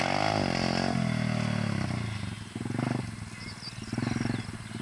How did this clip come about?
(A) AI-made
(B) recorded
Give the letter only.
B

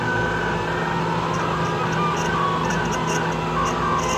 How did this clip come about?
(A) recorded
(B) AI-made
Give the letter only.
A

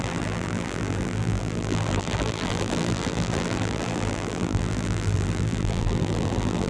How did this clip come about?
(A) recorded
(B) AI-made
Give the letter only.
B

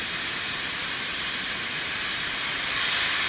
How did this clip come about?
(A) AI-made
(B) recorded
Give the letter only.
A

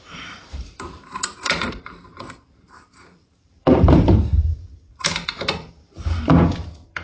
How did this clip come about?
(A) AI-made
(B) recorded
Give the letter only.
A